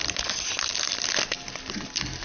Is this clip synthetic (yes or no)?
no